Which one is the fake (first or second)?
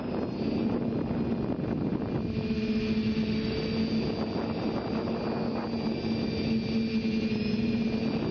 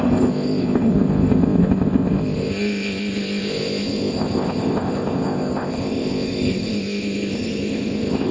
second